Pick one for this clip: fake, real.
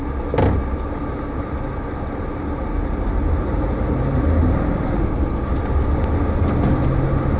real